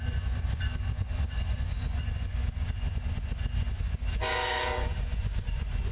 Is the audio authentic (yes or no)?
no